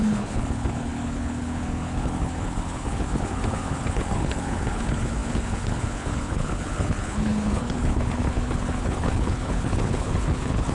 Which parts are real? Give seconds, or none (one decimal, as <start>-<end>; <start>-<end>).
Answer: none